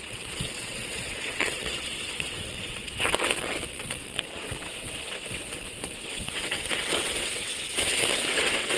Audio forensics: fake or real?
fake